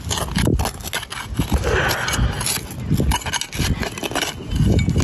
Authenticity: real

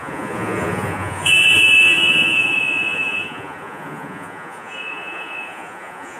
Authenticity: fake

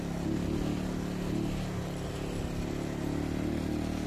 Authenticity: real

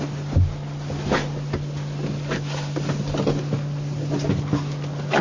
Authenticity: real